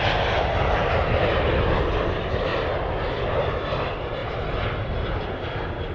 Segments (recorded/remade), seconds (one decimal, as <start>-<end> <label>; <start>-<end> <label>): 0.0-5.9 recorded